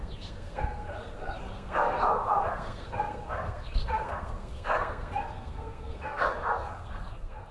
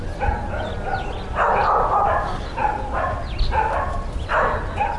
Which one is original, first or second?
second